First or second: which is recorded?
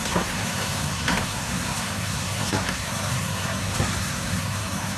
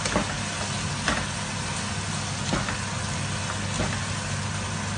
second